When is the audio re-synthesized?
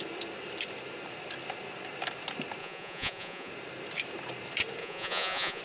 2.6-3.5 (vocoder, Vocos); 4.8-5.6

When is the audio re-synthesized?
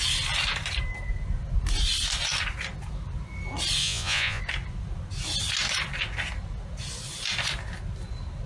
3.8-4.4 (vocoder, Vocos)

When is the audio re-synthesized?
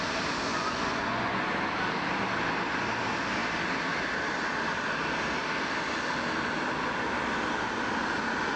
0.5-1.4 (vocoder, Vocos)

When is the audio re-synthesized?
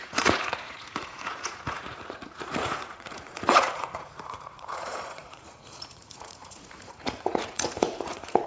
0.0-8.5 (vocoder, Vocos)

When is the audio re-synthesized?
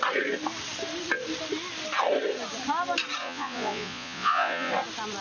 3.2-4.7 (vocoder, Vocos)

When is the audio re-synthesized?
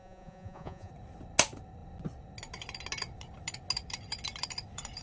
0.0-0.9 (vocoder, Vocos)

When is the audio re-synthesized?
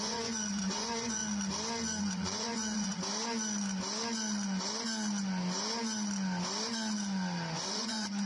0.0-1.2 (vocoder, Vocos); 2.0-3.1; 7.6-8.3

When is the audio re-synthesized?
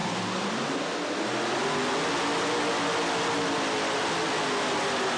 none